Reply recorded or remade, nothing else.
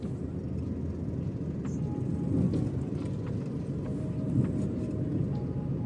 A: recorded